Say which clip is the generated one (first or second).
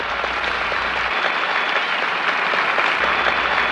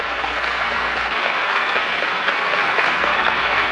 second